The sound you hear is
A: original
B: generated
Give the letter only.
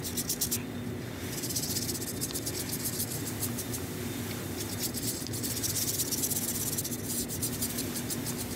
A